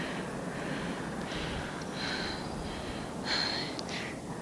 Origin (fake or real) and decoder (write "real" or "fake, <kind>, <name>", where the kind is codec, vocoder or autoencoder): real